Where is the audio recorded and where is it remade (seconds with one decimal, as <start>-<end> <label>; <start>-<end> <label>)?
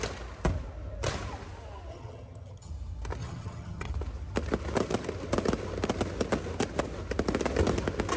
0.0-1.9 recorded; 1.9-2.7 remade; 2.7-3.2 recorded; 3.2-3.9 remade; 3.9-8.2 recorded